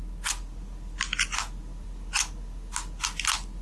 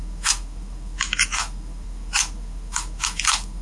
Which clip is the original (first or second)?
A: first